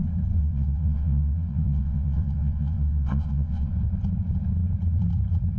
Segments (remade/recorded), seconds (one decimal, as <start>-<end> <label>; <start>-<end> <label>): 0.0-0.4 recorded; 0.4-3.7 remade; 3.7-5.6 recorded